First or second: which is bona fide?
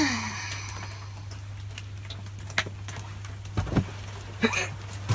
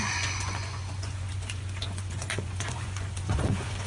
first